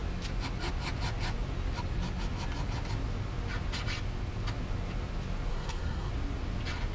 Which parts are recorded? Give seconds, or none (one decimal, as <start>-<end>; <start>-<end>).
0.0-5.5; 6.1-6.9